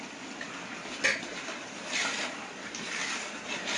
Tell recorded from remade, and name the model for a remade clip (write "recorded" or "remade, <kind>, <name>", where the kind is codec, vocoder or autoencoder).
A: remade, vocoder, BigVGAN v2